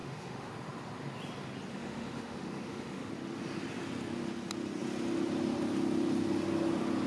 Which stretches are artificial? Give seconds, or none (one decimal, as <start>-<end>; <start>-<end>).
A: 0.0-0.5; 1.7-3.1